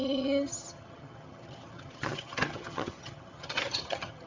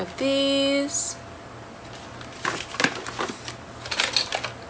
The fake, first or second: first